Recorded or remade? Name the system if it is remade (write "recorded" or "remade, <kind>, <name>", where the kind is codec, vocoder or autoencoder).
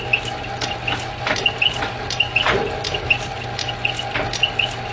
recorded